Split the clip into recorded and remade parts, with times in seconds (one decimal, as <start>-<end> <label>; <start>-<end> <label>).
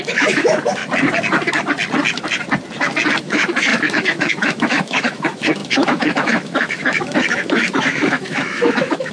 0.0-0.8 remade; 0.8-3.2 recorded; 3.2-9.1 remade